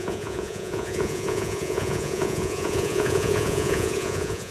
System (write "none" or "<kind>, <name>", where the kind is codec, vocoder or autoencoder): vocoder, Vocos